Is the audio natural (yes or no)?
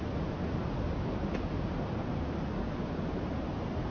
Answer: yes